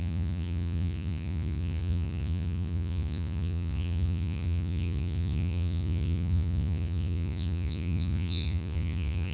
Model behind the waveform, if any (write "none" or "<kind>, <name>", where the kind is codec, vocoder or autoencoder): vocoder, Vocos